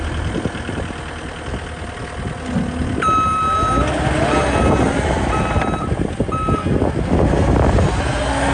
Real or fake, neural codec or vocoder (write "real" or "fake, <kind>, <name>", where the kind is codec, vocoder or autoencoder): real